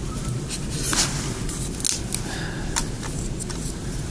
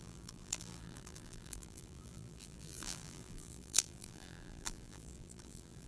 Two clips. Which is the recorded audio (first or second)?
first